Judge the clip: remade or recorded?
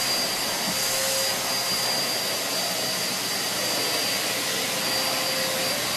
recorded